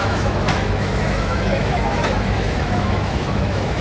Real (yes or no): no